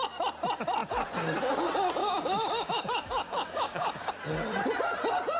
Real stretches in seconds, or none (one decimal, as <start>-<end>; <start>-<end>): 0.0-2.0; 4.1-5.4